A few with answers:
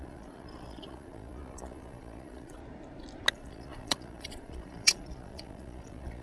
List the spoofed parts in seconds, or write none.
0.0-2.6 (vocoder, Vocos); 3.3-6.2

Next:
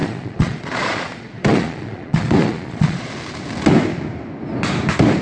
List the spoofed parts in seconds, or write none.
0.0-3.1 (vocoder, Vocos)